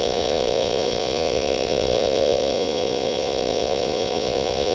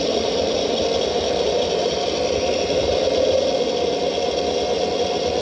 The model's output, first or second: first